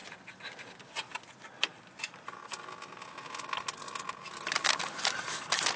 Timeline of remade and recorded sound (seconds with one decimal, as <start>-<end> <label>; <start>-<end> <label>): 0.0-5.8 recorded